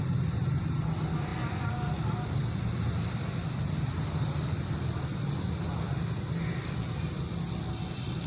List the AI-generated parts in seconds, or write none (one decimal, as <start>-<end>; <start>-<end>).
none